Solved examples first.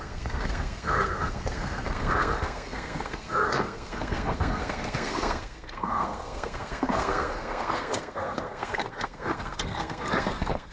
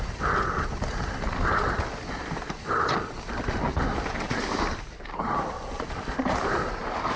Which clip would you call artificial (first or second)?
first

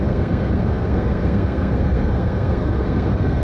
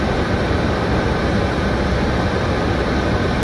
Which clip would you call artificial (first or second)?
first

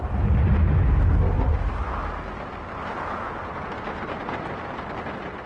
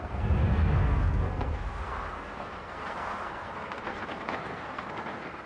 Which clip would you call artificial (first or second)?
second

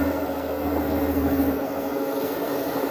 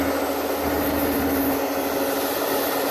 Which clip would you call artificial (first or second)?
first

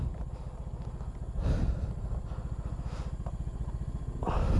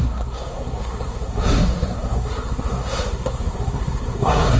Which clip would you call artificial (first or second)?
second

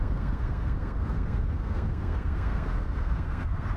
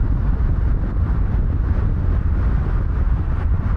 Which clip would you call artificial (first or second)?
first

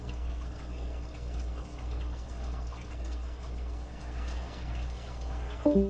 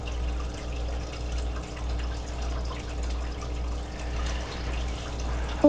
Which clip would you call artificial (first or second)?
first